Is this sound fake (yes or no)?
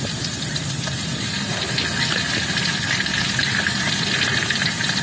no